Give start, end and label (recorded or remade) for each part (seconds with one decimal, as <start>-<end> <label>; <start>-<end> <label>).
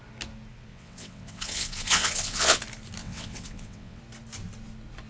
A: 0.0-0.7 recorded; 0.7-2.6 remade; 2.6-3.0 recorded; 3.0-4.0 remade; 4.0-5.1 recorded